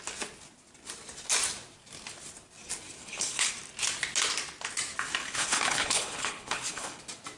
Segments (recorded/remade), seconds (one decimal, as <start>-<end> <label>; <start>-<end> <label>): 0.0-3.0 recorded; 3.0-3.5 remade; 3.5-5.2 recorded; 5.2-7.0 remade; 7.0-7.4 recorded